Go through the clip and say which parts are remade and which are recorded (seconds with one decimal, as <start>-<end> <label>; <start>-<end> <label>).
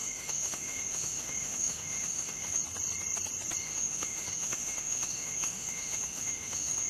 0.0-2.6 remade; 2.6-3.6 recorded; 3.6-6.9 remade